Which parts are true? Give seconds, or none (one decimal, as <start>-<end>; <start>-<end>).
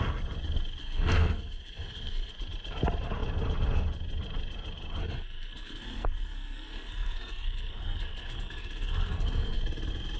0.0-0.8; 2.3-5.0; 9.6-10.2